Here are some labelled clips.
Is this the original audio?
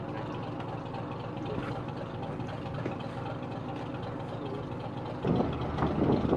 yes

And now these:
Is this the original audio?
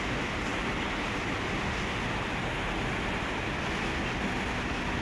yes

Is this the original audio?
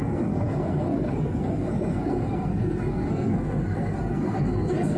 no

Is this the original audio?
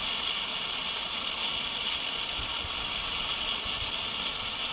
yes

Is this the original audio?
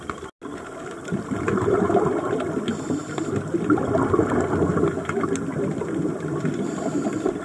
yes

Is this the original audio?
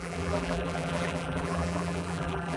no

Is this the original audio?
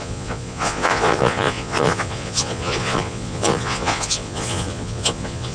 no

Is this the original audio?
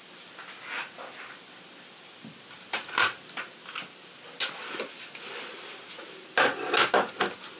yes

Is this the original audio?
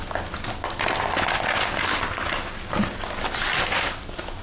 yes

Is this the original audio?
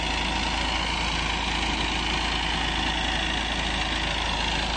yes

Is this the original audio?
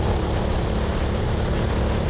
yes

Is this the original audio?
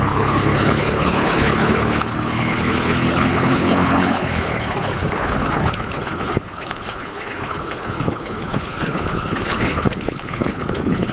no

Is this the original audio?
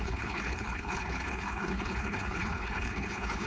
no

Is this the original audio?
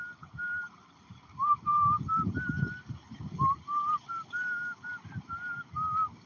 yes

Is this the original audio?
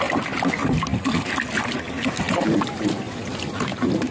yes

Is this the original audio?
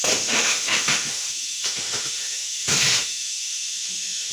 no